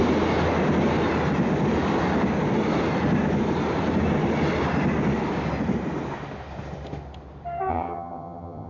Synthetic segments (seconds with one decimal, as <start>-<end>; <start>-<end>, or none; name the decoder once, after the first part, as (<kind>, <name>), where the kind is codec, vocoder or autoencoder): 7.7-8.7 (vocoder, HiFi-GAN)